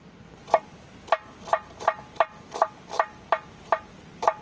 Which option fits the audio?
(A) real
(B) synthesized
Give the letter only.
A